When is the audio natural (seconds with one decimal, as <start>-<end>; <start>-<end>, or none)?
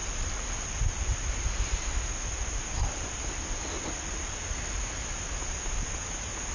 0.0-6.5